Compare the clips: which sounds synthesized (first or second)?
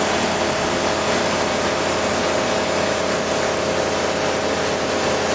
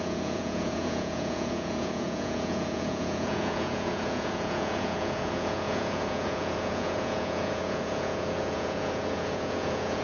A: second